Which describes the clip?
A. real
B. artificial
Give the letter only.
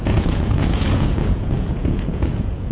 B